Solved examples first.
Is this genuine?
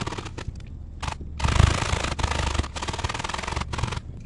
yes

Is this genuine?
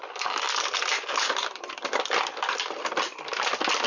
no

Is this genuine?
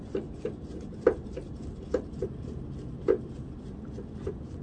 no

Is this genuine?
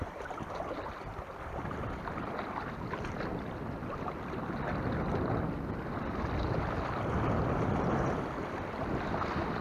yes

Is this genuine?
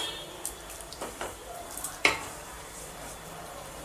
no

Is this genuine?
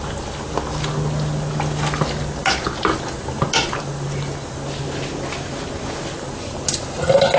yes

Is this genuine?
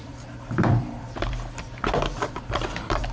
no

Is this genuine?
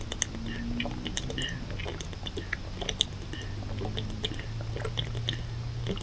yes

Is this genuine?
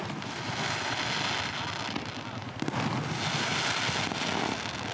yes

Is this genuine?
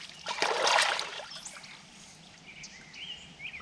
yes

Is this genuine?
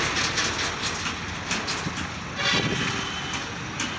yes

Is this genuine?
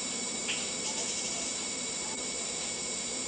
no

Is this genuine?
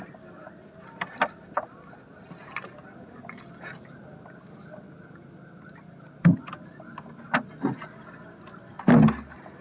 yes